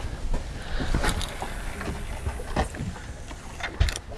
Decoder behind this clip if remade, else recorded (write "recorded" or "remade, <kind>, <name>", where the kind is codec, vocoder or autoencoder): recorded